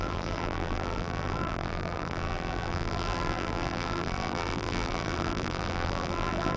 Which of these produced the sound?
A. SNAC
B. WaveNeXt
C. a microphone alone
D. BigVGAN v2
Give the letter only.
D